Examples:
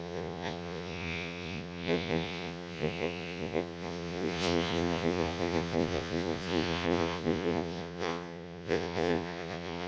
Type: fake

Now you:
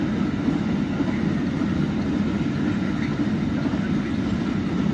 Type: real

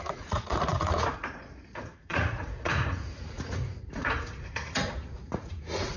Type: fake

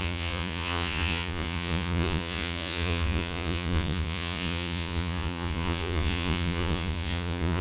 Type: fake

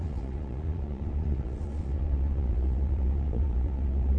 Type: fake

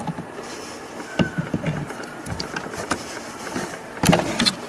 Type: real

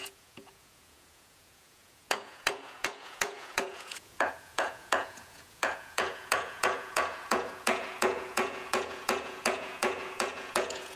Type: fake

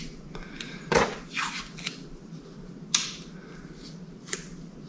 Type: real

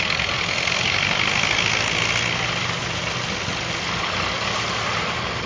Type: real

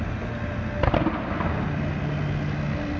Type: real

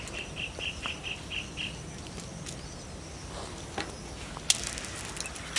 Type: real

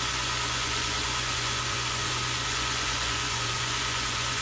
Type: fake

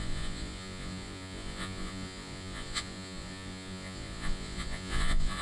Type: fake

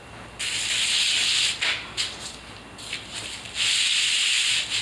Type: real